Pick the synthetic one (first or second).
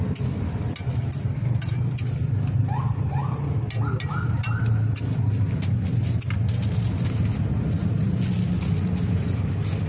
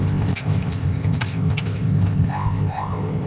second